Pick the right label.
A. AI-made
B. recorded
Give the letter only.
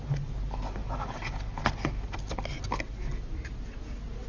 B